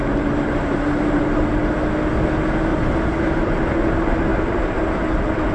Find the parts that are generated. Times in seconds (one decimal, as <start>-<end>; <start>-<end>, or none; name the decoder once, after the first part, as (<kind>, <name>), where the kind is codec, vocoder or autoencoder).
0.0-1.2 (vocoder, BigVGAN v2); 2.7-3.2; 4.3-5.0